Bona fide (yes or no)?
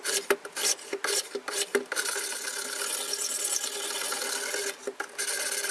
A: yes